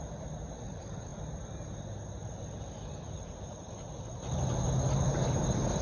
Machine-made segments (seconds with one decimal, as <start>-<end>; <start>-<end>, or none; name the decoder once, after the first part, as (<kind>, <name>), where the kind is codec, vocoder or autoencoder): none